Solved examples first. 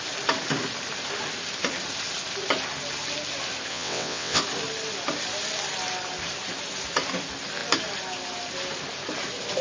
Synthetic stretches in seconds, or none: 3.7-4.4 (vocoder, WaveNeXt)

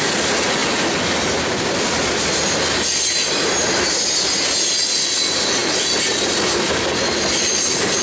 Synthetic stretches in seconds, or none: none

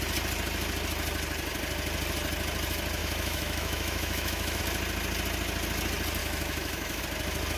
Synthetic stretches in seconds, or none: 3.0-4.6 (autoencoder, DAC-VAE); 6.2-7.0

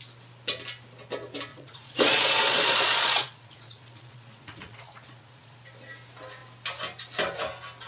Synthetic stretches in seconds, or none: 1.5-5.6 (vocoder, Vocos)

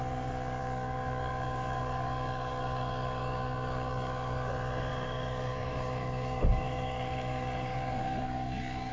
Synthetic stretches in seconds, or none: 0.6-4.5 (codec, DAC); 4.9-8.9

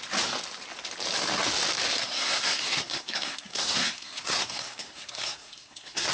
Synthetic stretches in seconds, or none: 2.0-6.1 (codec, SNAC)

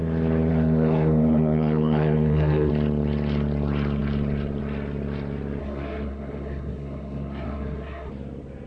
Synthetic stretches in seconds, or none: 0.5-2.7 (codec, SNAC); 5.6-8.1